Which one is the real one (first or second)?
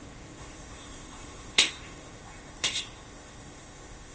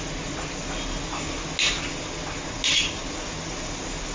second